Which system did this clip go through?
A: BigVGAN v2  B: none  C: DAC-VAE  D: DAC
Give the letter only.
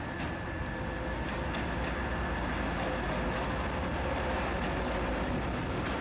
B